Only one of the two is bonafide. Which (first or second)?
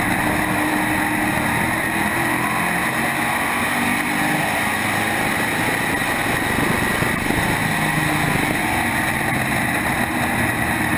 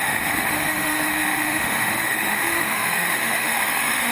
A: first